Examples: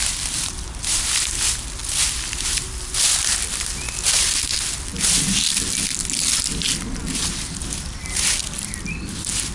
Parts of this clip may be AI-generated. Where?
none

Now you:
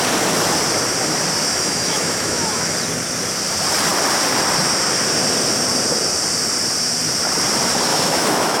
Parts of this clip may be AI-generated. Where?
1.4-2.6 (autoencoder, DAC-VAE); 7.9-8.6

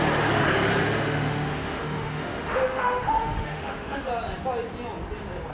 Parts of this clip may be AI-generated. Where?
0.8-4.1 (autoencoder, DAC-VAE)

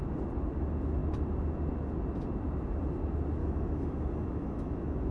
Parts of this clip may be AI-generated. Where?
3.4-5.1 (autoencoder, DAC-VAE)

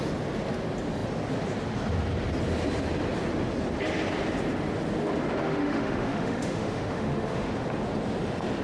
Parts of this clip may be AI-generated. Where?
5.4-7.5 (autoencoder, DAC-VAE)